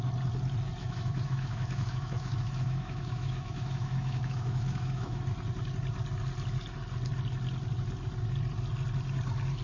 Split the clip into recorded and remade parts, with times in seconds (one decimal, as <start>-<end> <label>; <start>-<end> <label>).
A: 0.0-0.8 recorded; 0.8-5.2 remade; 5.2-9.6 recorded